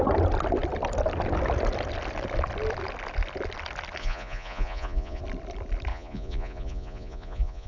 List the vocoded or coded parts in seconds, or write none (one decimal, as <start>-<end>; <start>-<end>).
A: 4.0-5.2; 5.9-7.7